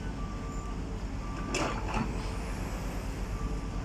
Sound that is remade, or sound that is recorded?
recorded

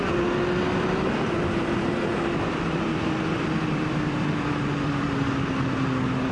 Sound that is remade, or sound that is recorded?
remade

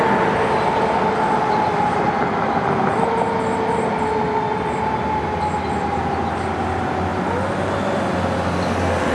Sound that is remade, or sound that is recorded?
recorded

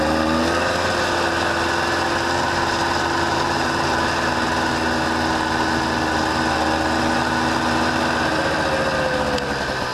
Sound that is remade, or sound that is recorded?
recorded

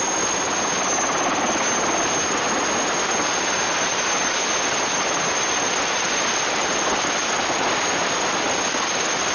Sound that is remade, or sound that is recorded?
recorded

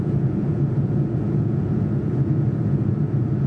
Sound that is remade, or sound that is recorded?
remade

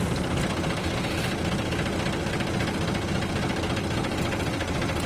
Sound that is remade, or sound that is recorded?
recorded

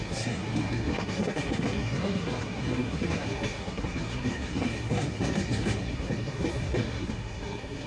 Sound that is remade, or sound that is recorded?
remade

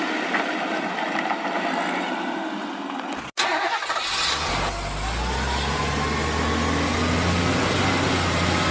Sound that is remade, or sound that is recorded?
recorded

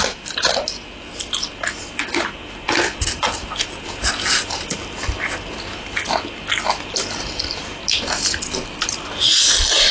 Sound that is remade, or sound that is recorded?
recorded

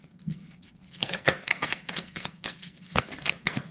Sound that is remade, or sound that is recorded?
remade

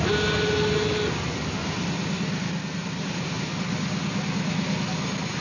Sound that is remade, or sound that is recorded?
recorded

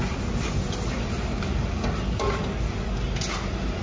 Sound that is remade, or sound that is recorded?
recorded